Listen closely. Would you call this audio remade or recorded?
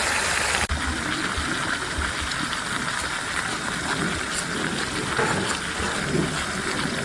recorded